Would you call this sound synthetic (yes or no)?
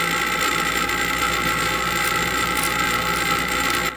no